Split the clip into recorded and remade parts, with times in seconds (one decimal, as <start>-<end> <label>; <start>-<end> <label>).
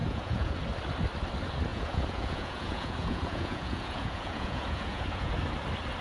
0.0-0.6 remade; 0.6-1.7 recorded; 1.7-5.3 remade; 5.3-6.0 recorded